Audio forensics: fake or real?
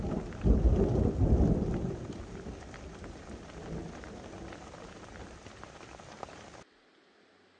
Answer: real